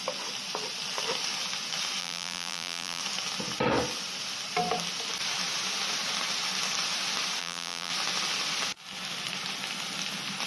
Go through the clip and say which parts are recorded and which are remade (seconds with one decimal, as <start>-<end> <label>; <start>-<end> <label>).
0.0-2.0 recorded; 2.0-3.0 remade; 3.0-7.4 recorded; 7.4-7.9 remade; 7.9-10.5 recorded